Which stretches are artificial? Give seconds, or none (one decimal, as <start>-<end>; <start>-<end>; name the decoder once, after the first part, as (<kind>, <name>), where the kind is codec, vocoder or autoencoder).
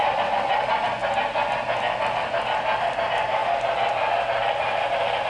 0.0-1.0 (vocoder, BigVGAN v2); 3.0-3.4; 4.4-5.3